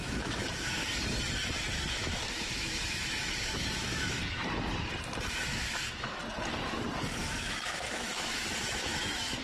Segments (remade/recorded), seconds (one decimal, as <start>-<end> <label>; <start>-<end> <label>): 0.0-0.8 remade; 0.8-1.9 recorded; 1.9-4.2 remade; 4.2-5.3 recorded; 5.3-6.2 remade; 6.2-7.2 recorded; 7.2-9.4 remade